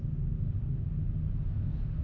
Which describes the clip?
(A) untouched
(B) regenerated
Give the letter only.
A